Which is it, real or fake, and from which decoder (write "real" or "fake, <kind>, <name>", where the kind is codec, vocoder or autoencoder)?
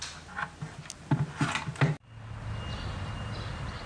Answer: real